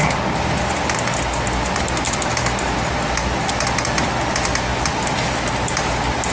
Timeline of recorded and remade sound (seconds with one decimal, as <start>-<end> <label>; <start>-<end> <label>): 0.0-4.7 recorded; 4.7-5.3 remade; 5.3-6.3 recorded